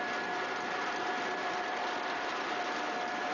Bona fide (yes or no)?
no